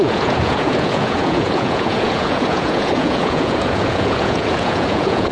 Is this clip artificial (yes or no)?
yes